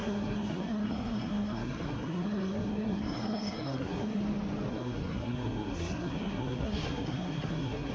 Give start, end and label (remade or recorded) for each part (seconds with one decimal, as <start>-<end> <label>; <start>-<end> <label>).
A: 0.0-4.2 remade; 4.2-4.7 recorded; 4.7-7.9 remade